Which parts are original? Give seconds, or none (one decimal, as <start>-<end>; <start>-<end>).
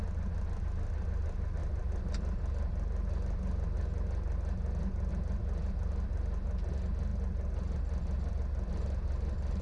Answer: 0.0-9.6